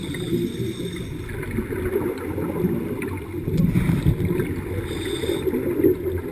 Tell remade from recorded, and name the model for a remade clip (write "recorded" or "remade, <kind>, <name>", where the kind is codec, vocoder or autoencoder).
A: recorded